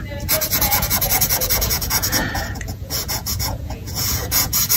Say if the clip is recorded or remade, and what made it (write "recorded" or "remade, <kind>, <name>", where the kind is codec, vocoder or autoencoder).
remade, vocoder, Vocos